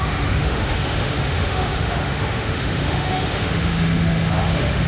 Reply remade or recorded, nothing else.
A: remade